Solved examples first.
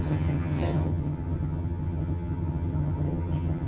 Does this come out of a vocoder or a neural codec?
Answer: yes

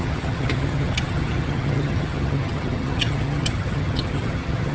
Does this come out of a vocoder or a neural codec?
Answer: yes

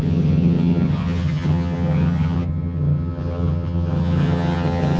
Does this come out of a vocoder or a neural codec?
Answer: yes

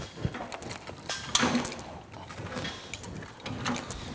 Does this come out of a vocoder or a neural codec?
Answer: no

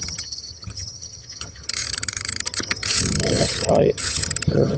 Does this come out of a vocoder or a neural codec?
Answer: yes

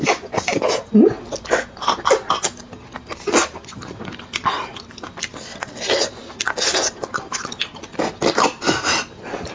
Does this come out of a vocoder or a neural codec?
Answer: no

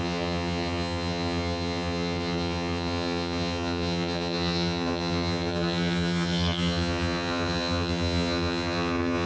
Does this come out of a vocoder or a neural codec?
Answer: yes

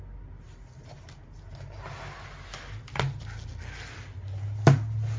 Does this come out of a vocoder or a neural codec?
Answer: no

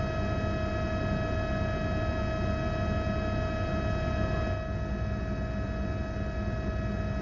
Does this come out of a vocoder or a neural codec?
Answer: no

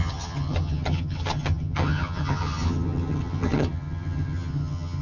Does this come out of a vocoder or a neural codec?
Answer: yes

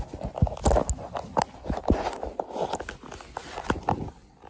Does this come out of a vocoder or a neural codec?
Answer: no